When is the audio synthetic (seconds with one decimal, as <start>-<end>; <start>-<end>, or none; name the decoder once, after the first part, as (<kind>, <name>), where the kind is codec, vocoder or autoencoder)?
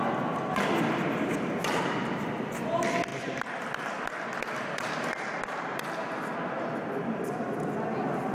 1.6-2.4 (vocoder, BigVGAN v2)